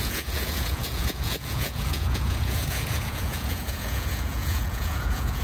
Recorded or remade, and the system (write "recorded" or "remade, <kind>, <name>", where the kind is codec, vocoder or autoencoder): remade, vocoder, Vocos